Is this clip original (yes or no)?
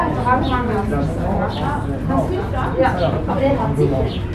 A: yes